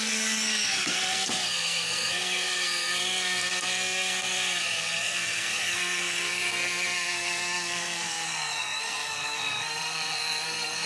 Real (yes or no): no